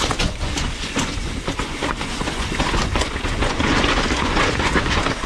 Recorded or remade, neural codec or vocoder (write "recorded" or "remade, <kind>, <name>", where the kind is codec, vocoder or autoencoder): remade, vocoder, Vocos